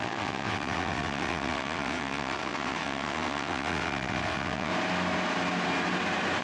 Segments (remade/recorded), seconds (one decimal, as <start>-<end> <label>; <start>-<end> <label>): 0.0-4.7 remade; 4.7-6.4 recorded